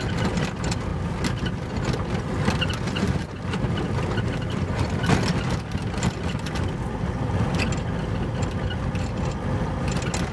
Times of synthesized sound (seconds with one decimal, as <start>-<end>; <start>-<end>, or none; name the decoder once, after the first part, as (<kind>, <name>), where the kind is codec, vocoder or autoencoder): none